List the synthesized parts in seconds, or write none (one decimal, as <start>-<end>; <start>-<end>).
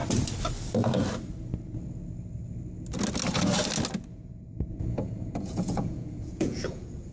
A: 4.1-7.1